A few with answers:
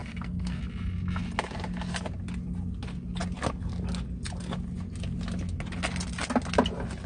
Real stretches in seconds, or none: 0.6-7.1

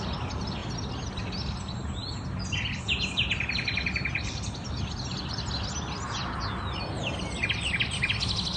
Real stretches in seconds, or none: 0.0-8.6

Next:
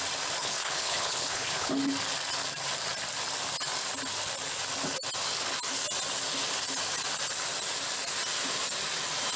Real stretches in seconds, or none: 0.0-0.4; 1.7-9.4